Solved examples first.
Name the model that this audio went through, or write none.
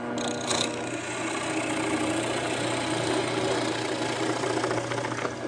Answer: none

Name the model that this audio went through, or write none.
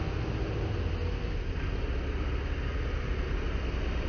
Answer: none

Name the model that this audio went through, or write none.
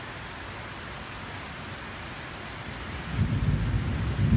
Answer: none